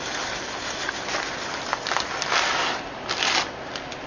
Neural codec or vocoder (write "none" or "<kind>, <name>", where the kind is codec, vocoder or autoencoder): none